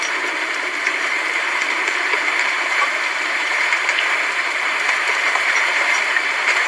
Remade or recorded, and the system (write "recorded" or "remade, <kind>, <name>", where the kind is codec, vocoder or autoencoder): remade, vocoder, BigVGAN v2